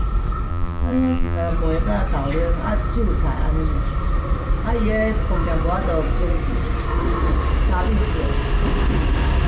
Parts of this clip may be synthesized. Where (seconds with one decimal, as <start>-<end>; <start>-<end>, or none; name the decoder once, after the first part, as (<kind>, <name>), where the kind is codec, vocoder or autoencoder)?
0.5-1.5 (vocoder, BigVGAN v2)

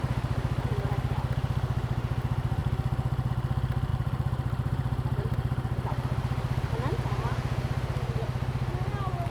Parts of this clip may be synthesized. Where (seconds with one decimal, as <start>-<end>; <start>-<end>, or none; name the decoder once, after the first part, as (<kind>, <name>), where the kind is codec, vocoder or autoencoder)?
3.9-6.7 (vocoder, BigVGAN v2)

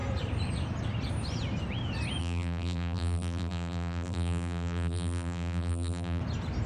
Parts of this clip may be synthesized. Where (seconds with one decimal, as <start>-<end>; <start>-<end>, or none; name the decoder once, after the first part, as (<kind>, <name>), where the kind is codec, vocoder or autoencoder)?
2.2-6.2 (vocoder, BigVGAN v2)

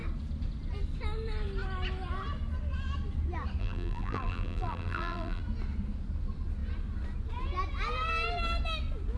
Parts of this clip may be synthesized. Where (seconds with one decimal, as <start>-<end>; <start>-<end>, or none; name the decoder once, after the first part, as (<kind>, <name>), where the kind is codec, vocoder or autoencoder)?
3.6-5.4 (vocoder, BigVGAN v2)

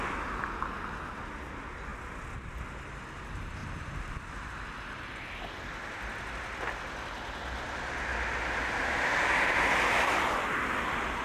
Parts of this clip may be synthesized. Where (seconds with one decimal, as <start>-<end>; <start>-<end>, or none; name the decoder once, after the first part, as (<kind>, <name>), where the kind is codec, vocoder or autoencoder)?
3.6-5.0 (vocoder, BigVGAN v2)